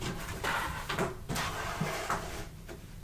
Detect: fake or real fake